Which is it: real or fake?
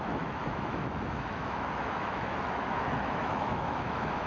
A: fake